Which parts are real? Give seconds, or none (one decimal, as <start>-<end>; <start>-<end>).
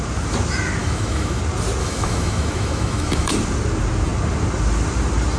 0.0-0.8; 1.4-1.8; 3.3-5.4